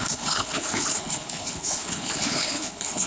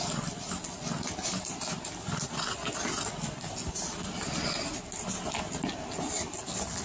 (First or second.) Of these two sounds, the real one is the second